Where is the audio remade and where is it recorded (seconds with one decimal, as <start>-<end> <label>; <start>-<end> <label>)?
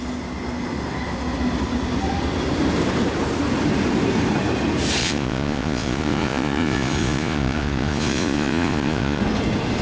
0.0-5.0 recorded; 5.0-9.2 remade; 9.2-9.8 recorded